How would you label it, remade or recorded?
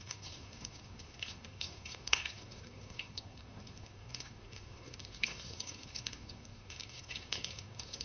remade